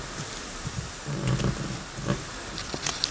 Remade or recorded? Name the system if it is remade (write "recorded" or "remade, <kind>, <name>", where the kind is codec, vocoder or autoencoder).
recorded